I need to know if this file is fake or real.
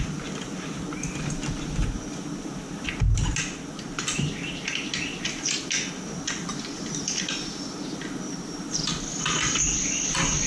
real